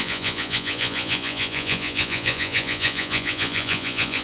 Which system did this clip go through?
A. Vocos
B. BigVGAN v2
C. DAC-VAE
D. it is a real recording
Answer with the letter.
A